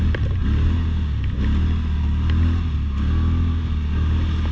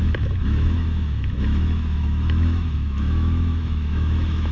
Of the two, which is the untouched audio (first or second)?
first